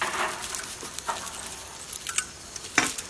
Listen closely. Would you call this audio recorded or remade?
recorded